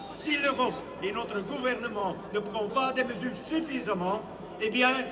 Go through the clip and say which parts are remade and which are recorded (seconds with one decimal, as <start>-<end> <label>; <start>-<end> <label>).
0.0-0.9 remade; 0.9-1.6 recorded; 1.6-2.0 remade; 2.0-2.7 recorded; 2.7-5.1 remade